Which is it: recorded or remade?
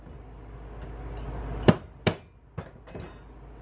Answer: recorded